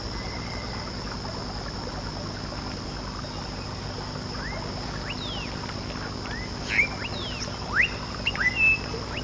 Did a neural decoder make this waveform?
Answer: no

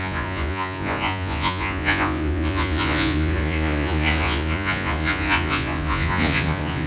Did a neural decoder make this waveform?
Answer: yes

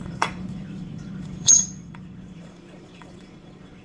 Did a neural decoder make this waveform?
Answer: yes